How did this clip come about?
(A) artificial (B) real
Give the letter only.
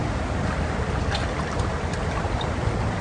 B